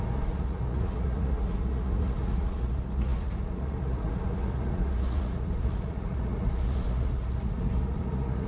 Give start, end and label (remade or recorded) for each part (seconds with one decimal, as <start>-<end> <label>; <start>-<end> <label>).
0.0-8.5 remade